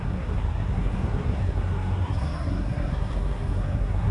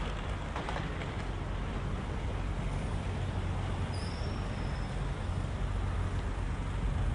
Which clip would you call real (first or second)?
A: second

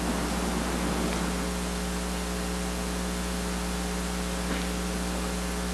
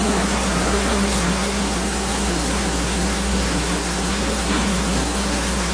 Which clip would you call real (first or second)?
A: first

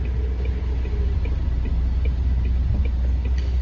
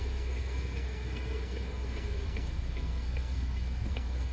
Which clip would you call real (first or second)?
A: first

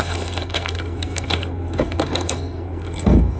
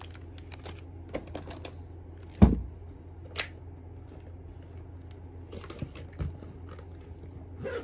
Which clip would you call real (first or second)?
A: second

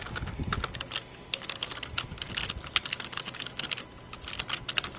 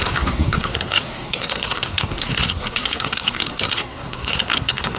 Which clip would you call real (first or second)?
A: first